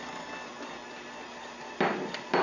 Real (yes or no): yes